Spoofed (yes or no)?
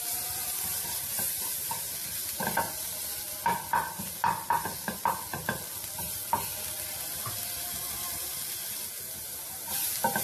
no